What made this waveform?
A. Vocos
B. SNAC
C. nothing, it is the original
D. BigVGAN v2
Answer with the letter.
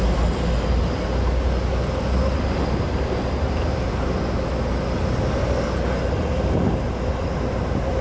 C